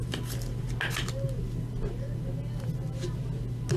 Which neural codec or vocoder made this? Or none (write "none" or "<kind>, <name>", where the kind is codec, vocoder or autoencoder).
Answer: none